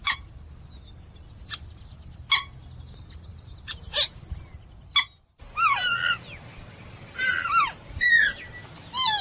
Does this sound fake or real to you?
real